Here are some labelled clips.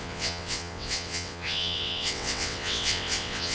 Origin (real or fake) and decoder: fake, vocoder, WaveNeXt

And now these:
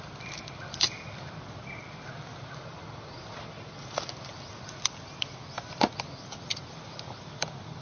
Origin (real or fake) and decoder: real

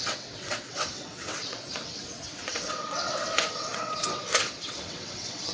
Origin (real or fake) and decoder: fake, vocoder, WaveNeXt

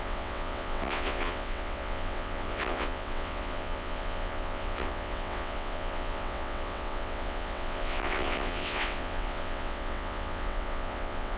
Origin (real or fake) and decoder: fake, vocoder, WaveNeXt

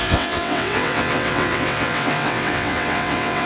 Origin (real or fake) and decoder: fake, vocoder, WaveNeXt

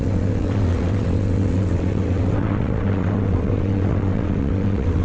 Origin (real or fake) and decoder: fake, vocoder, WaveNeXt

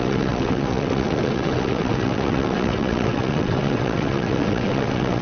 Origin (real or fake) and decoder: fake, vocoder, WaveNeXt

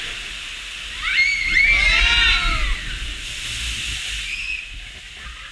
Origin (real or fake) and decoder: real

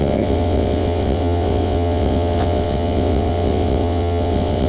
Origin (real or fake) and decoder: fake, vocoder, WaveNeXt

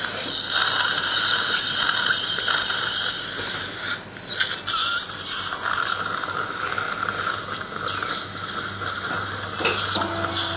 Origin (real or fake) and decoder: real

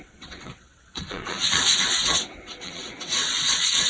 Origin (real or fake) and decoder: fake, vocoder, WaveNeXt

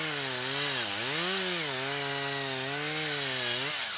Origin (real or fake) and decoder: real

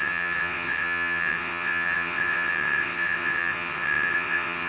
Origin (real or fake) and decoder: fake, vocoder, WaveNeXt